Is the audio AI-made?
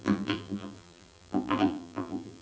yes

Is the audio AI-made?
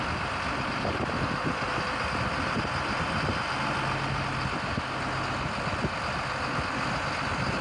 no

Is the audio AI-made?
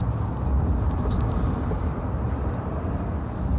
no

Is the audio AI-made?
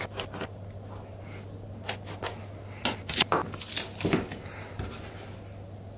no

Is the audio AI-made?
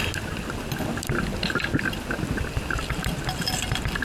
no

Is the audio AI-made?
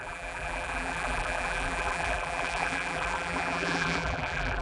yes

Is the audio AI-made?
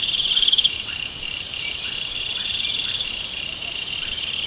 yes